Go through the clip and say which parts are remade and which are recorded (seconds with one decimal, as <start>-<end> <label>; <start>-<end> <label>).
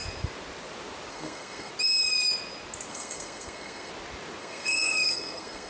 0.0-1.1 recorded; 1.1-1.7 remade; 1.7-2.9 recorded; 2.9-3.9 remade; 3.9-4.4 recorded; 4.4-5.7 remade